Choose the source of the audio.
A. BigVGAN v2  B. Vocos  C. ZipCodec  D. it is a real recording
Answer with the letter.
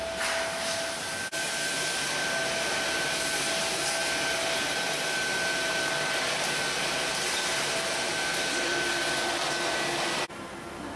D